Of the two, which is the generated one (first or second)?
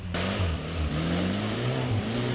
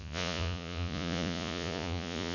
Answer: second